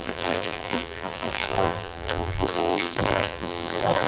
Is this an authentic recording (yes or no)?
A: no